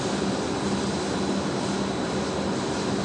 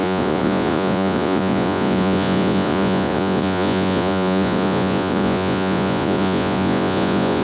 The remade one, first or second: second